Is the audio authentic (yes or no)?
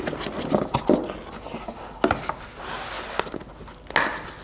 yes